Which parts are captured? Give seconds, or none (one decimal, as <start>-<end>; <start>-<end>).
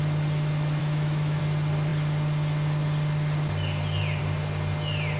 0.0-0.8; 1.4-5.2